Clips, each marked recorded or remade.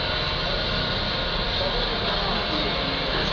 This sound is recorded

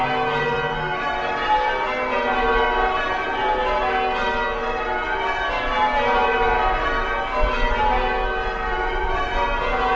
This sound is recorded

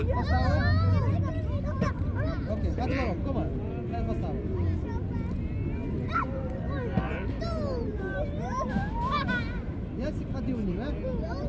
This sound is recorded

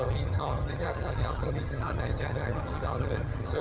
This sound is remade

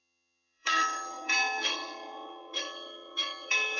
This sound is remade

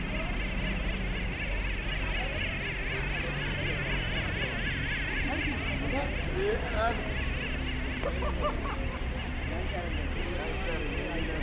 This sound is recorded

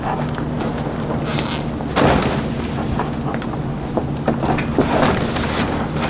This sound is recorded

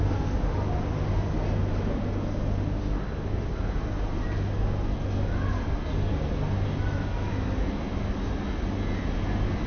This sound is recorded